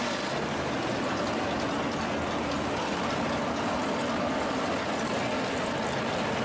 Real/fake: real